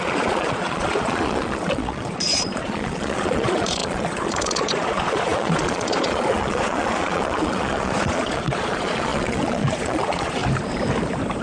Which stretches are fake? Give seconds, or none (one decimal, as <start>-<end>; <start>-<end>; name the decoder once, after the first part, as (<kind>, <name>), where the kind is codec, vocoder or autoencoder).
0.0-10.4 (vocoder, Vocos)